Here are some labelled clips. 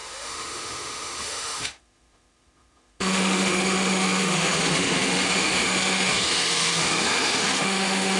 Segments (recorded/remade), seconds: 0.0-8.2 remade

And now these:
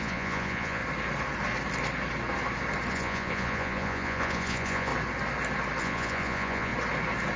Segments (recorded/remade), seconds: 0.0-0.8 remade; 0.8-2.9 recorded; 2.9-4.9 remade; 4.9-5.8 recorded; 5.8-6.7 remade; 6.7-7.4 recorded

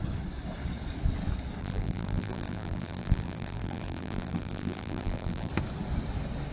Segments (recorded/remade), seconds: 0.0-1.6 recorded; 1.6-5.5 remade; 5.5-6.5 recorded